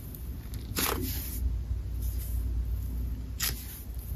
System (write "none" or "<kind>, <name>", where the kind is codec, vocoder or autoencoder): none